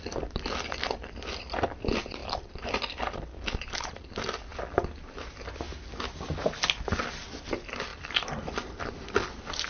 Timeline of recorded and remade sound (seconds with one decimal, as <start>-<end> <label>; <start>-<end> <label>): 0.0-4.5 remade; 4.5-6.9 recorded; 6.9-9.7 remade